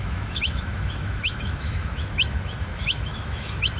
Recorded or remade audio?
remade